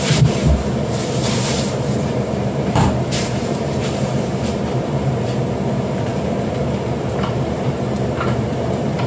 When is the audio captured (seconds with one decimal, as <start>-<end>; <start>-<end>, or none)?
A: none